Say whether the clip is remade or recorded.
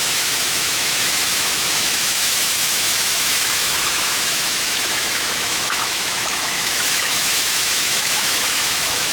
remade